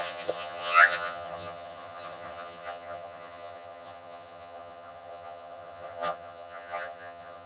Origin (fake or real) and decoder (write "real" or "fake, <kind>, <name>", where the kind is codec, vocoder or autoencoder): fake, vocoder, HiFi-GAN